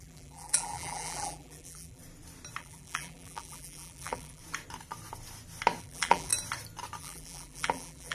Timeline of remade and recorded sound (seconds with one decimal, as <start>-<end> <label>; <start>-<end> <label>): 0.0-2.0 remade; 2.0-2.6 recorded; 2.6-4.4 remade; 4.4-5.8 recorded; 5.8-6.3 remade; 6.3-7.0 recorded; 7.0-8.1 remade